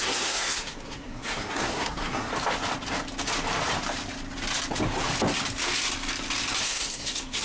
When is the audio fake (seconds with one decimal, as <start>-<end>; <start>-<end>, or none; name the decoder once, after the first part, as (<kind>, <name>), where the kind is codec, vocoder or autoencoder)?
0.0-2.3 (codec, SNAC); 6.6-7.4